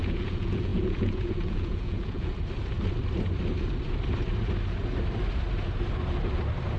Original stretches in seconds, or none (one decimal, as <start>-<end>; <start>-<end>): 2.3-6.8